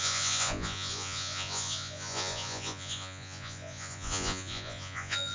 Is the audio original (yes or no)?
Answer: no